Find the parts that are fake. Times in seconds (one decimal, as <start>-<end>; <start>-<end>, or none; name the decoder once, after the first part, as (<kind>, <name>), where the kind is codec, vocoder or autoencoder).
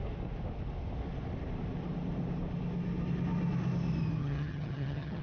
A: 4.2-5.2 (vocoder, HiFi-GAN)